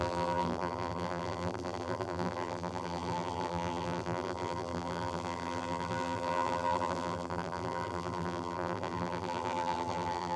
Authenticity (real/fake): fake